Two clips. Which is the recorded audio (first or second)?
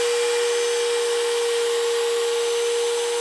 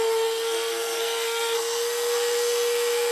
first